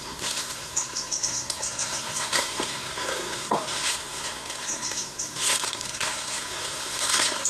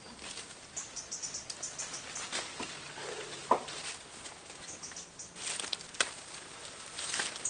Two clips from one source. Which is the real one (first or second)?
second